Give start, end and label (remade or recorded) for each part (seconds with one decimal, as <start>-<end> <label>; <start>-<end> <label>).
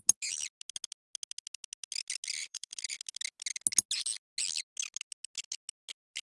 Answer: 0.0-2.4 recorded; 2.4-3.0 remade; 3.0-6.4 recorded